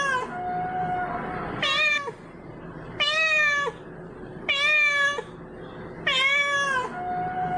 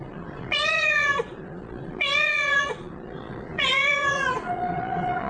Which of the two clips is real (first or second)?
first